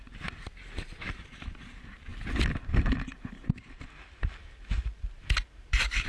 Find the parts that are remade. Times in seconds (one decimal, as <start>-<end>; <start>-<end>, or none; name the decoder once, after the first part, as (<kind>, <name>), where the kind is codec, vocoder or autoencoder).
0.0-2.1 (vocoder, BigVGAN v2); 3.1-6.1

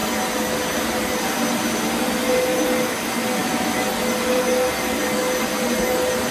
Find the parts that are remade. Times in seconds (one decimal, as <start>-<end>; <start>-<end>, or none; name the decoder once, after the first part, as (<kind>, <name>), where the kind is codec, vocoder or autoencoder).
none

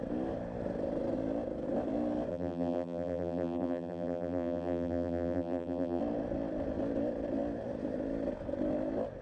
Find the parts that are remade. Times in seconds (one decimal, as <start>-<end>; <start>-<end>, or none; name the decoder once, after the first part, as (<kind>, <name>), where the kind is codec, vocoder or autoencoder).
2.3-6.0 (vocoder, BigVGAN v2)

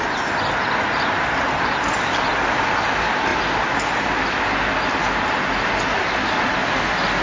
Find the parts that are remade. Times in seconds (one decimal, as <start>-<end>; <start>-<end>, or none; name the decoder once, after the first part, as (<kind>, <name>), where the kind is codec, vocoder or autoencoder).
none

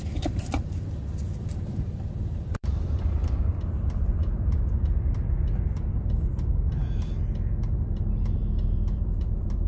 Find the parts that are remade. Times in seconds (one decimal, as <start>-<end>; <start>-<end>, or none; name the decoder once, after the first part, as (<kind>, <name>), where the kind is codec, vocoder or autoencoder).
0.0-6.8 (vocoder, BigVGAN v2); 7.6-9.7

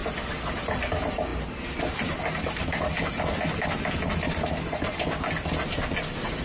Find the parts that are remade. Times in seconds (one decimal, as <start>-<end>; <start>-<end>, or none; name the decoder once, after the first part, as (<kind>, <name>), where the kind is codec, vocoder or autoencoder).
0.0-0.9 (vocoder, BigVGAN v2)

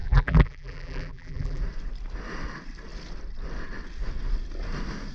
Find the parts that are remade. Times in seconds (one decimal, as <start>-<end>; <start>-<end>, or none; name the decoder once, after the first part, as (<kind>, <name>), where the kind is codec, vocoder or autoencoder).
0.0-1.6 (vocoder, BigVGAN v2)

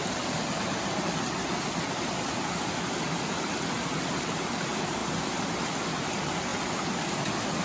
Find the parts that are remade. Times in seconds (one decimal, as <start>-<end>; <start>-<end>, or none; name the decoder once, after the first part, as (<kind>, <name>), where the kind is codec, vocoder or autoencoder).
0.0-1.5 (vocoder, BigVGAN v2); 4.1-5.0; 5.9-6.5